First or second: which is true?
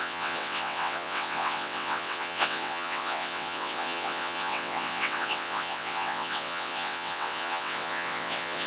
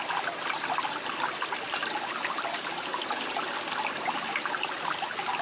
second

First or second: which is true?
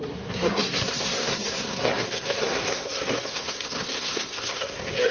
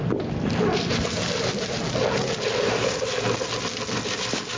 second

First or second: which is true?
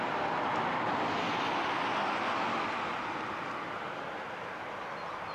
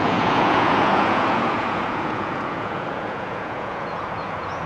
first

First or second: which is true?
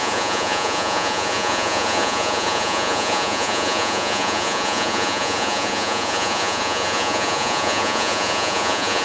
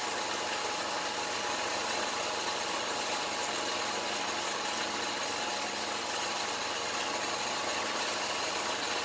second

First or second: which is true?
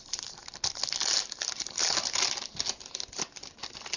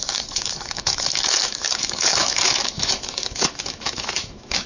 first